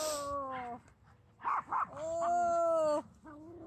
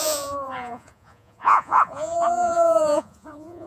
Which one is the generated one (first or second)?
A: second